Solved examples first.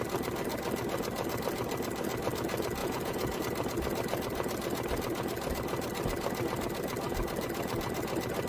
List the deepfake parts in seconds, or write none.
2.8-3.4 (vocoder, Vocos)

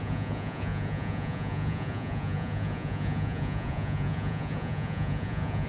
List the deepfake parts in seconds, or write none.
0.0-5.7 (vocoder, Vocos)

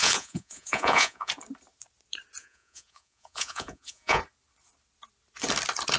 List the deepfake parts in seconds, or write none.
0.0-1.3 (vocoder, Vocos); 2.4-4.2